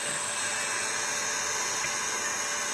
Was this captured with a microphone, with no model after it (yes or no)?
yes